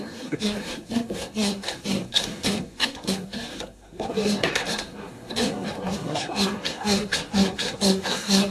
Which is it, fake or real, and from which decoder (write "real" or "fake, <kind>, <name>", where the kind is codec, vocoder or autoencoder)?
fake, codec, SNAC